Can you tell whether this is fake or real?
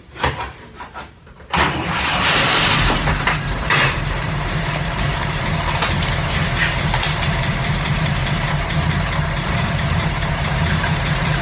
fake